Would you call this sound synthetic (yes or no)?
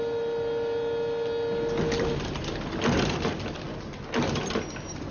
no